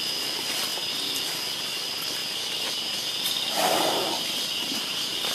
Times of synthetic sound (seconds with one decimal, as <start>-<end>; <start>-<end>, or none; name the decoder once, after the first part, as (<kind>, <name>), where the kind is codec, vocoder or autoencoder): none